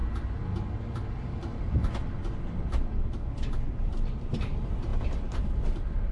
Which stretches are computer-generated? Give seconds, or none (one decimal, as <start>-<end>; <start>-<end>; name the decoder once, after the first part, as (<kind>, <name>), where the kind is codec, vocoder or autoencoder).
1.4-1.8 (vocoder, BigVGAN v2); 2.5-2.9; 3.7-6.1